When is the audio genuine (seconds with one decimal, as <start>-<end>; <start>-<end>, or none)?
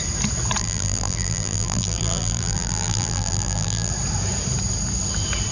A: 0.0-0.6; 3.9-5.5